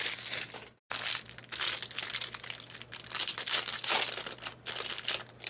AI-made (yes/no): no